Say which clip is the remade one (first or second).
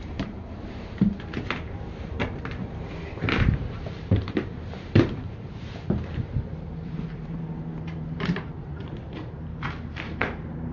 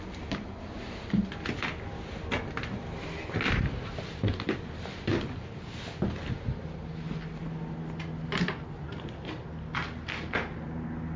first